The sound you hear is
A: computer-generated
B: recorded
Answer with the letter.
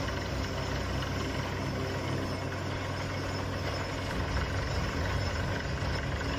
B